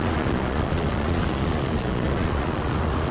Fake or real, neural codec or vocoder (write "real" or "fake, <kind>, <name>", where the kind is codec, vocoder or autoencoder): fake, vocoder, Vocos